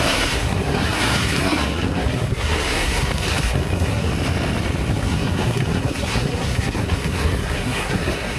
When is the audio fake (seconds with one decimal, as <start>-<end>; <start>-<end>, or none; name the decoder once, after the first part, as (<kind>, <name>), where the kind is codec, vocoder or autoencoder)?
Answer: 0.0-4.1 (codec, SNAC); 4.9-8.4